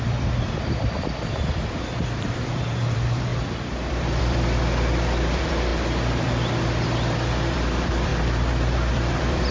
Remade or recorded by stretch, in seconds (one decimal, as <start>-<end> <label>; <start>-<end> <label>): 0.0-8.1 remade; 8.1-8.9 recorded; 8.9-9.5 remade